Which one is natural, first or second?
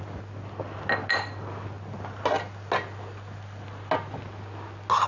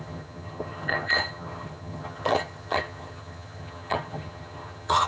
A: first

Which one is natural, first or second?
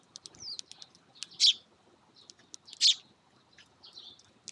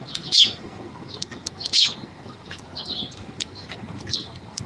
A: first